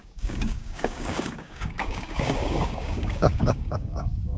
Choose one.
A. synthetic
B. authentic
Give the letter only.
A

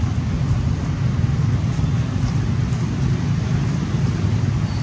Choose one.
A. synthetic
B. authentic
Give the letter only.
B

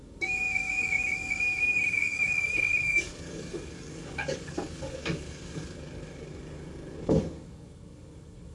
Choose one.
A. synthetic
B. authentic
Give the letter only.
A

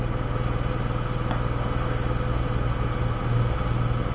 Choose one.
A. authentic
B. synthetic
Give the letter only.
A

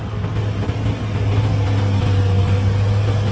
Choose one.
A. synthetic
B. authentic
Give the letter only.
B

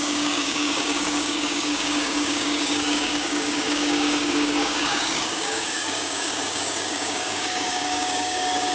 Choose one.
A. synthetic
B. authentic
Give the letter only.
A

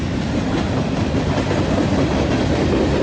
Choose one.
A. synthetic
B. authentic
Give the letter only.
B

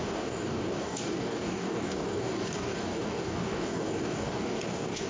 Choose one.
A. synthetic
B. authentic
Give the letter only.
A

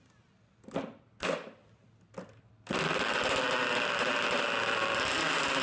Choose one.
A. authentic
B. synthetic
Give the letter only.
A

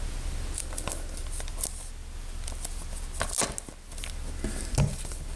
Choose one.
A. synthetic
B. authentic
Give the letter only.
B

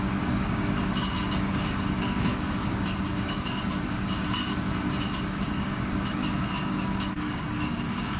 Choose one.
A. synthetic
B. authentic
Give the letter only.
A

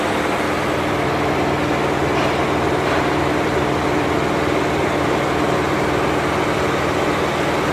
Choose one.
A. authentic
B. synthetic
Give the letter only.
A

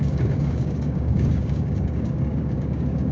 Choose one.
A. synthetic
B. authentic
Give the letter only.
A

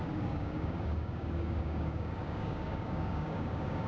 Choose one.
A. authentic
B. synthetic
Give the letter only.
B